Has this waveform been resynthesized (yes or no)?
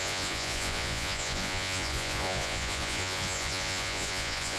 yes